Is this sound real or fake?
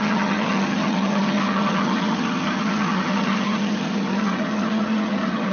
fake